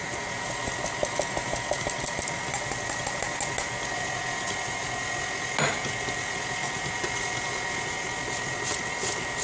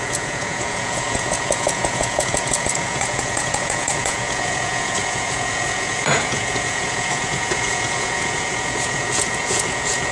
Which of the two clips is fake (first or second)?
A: second